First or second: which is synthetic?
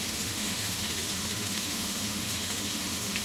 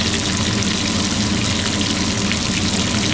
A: first